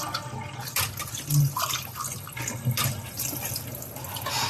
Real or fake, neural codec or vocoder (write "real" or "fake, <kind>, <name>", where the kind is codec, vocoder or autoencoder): real